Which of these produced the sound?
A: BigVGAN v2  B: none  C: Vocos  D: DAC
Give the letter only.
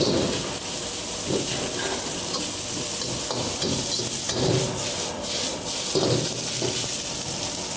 B